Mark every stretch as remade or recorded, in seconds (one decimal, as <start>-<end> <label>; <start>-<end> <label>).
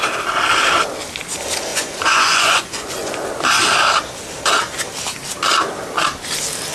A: 0.0-1.7 recorded; 1.7-3.1 remade; 3.1-6.7 recorded